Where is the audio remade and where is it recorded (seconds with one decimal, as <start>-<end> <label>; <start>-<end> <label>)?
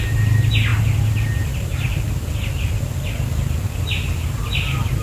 0.0-5.0 recorded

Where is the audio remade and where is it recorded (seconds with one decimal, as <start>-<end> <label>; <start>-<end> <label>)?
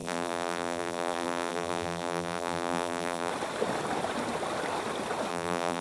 0.0-3.3 remade; 3.3-5.3 recorded; 5.3-5.8 remade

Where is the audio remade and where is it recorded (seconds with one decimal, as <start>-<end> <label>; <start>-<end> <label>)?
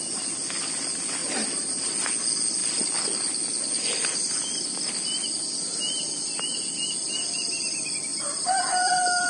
0.0-1.2 recorded; 1.2-1.9 remade; 1.9-8.1 recorded; 8.1-9.3 remade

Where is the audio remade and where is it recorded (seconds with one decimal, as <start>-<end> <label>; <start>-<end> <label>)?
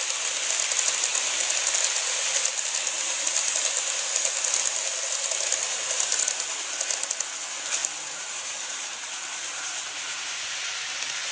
0.0-7.8 recorded; 7.8-10.6 remade; 10.6-11.3 recorded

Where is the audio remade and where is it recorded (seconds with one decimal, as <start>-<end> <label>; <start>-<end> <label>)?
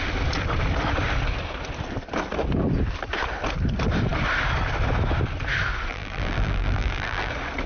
0.0-5.9 recorded; 5.9-7.3 remade; 7.3-7.7 recorded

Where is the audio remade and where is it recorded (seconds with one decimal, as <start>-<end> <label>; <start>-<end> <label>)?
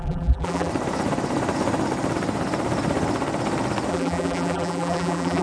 0.0-0.7 remade; 0.7-3.9 recorded; 3.9-5.4 remade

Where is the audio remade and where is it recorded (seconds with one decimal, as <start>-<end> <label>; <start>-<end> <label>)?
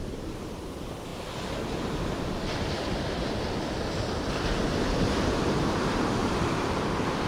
0.0-6.2 recorded; 6.2-6.8 remade; 6.8-7.3 recorded